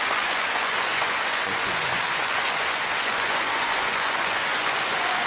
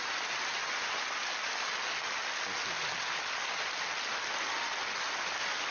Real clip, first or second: second